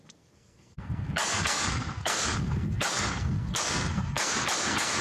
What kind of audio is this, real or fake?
fake